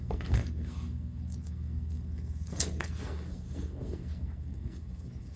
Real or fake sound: fake